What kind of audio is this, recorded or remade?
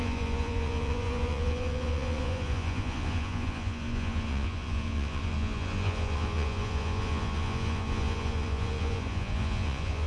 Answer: remade